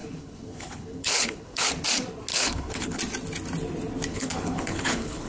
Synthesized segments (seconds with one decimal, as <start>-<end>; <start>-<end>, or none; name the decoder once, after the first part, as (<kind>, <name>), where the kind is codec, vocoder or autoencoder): 0.0-1.7 (codec, HILCodec); 2.3-3.0; 4.1-5.3